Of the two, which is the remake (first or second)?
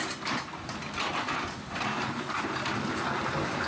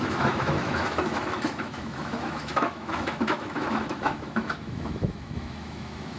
second